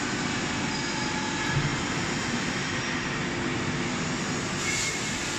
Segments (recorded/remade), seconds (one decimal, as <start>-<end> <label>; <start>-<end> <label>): 0.0-5.4 recorded